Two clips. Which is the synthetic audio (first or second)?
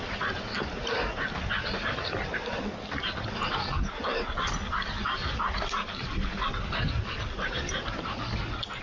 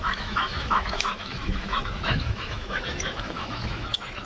second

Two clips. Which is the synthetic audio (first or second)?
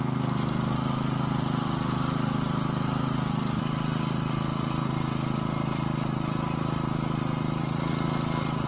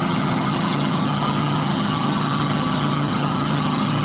second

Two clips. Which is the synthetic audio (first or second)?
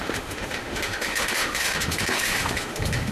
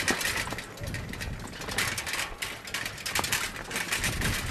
first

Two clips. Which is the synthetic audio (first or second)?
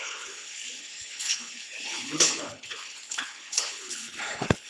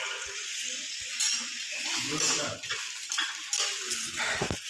first